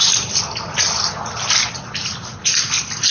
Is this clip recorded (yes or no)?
yes